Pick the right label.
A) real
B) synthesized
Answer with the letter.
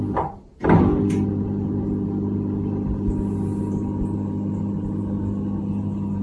A